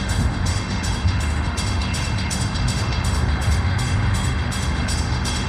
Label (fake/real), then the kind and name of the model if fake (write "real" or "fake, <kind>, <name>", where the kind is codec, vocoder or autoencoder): fake, autoencoder, DAC-VAE